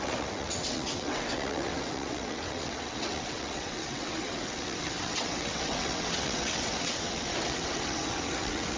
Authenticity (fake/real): fake